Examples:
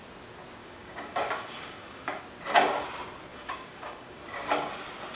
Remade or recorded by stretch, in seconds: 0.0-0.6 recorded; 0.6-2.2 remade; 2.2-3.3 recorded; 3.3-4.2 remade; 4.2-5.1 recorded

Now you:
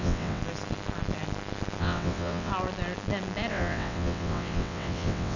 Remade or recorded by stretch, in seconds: 0.0-0.4 remade; 0.4-1.8 recorded; 1.8-2.5 remade; 2.5-3.5 recorded; 3.5-5.4 remade

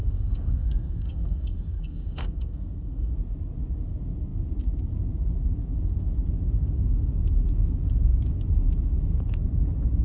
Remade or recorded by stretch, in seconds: 0.0-3.1 remade; 3.1-10.0 recorded

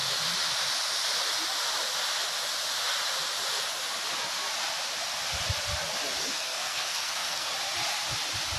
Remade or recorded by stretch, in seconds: 0.0-6.2 recorded; 6.2-7.5 remade; 7.5-8.6 recorded

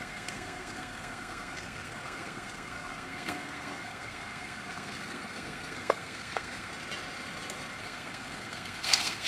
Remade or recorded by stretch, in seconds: 0.0-6.7 remade; 6.7-7.8 recorded; 7.8-9.3 remade

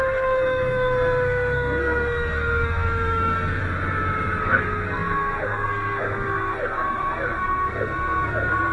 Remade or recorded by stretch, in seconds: 0.0-3.6 remade; 3.6-4.4 recorded; 4.4-8.7 remade

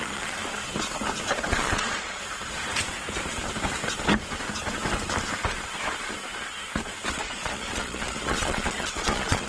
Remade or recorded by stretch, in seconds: 0.0-0.4 remade; 0.4-1.5 recorded; 1.5-2.2 remade; 2.2-7.1 recorded; 7.1-9.5 remade

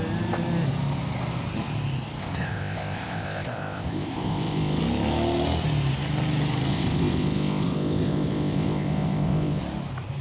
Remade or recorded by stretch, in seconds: 0.0-2.2 recorded; 2.2-4.8 remade; 4.8-6.7 recorded; 6.7-9.6 remade; 9.6-10.2 recorded